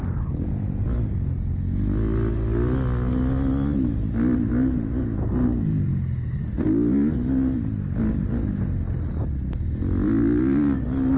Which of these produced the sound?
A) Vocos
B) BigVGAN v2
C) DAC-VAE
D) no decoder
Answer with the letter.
D